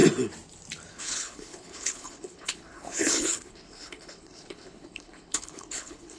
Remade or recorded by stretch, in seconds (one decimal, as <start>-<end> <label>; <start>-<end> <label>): 0.0-0.9 recorded; 0.9-6.2 remade